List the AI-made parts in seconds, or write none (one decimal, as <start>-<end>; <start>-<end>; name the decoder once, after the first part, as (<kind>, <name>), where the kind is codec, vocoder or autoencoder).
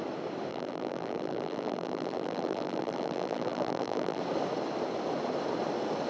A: 0.5-4.2 (vocoder, BigVGAN v2)